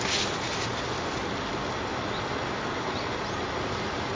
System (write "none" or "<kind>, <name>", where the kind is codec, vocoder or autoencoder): none